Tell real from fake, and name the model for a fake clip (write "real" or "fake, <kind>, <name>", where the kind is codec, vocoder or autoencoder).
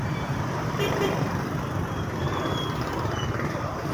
fake, vocoder, BigVGAN v2